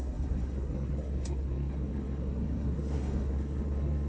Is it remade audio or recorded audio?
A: remade